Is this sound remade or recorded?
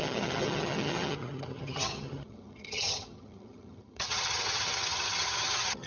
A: remade